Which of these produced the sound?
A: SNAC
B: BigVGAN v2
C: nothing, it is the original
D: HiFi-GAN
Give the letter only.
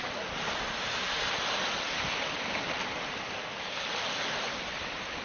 B